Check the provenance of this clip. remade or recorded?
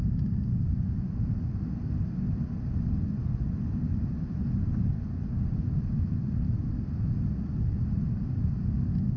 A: recorded